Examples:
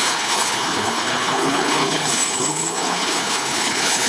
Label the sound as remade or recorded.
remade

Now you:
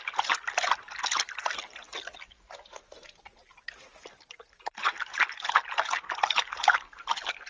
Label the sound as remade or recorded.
recorded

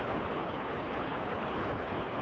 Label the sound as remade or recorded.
remade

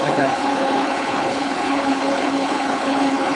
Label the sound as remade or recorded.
remade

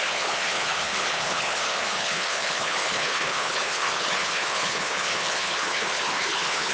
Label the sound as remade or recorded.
remade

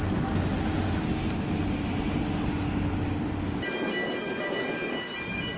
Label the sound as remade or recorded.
recorded